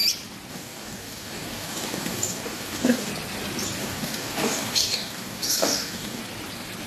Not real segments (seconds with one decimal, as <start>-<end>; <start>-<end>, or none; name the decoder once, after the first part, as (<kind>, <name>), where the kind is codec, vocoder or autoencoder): 0.5-3.1 (codec, DAC); 3.8-6.2